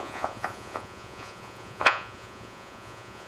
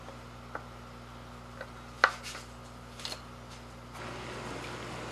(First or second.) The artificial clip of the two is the first